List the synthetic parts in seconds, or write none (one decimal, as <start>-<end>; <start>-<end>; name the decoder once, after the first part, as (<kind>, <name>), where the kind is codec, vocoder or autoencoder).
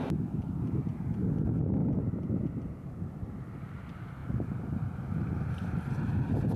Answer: 1.8-2.3 (vocoder, BigVGAN v2); 4.2-6.6